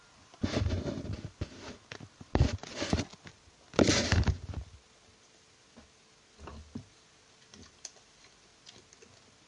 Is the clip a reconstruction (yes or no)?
no